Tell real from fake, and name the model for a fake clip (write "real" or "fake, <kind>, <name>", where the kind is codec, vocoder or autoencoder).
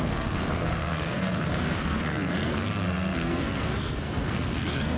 fake, codec, SNAC